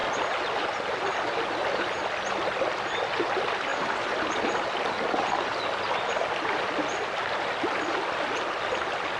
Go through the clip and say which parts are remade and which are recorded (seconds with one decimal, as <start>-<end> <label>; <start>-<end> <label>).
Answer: 0.0-3.7 recorded; 3.7-4.3 remade; 4.3-9.2 recorded